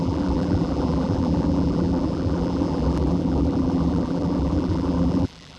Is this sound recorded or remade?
remade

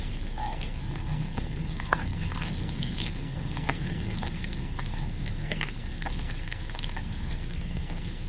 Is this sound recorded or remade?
remade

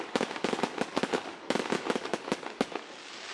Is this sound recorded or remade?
remade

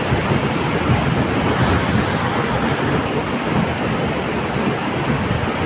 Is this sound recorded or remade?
recorded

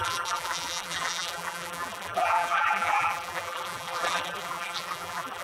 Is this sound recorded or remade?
remade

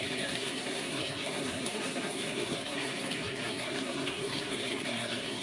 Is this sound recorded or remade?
remade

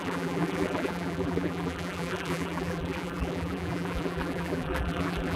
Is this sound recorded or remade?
remade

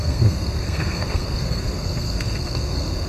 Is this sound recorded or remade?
remade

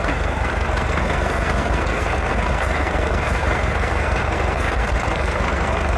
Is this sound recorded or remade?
remade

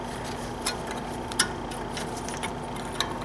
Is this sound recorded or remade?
recorded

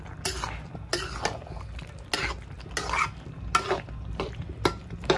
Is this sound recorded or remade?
recorded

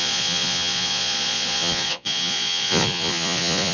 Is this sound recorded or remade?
remade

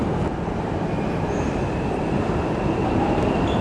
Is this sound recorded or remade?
remade